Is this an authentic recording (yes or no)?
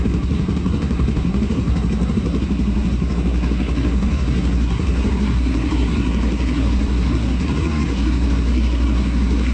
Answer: no